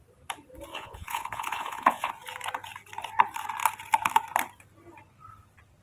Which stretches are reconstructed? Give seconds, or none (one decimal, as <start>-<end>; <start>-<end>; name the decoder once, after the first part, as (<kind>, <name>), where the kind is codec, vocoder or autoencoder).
0.7-2.1 (vocoder, Vocos)